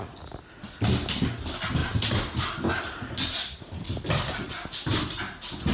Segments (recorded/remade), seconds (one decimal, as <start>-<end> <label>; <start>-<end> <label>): 0.0-5.7 recorded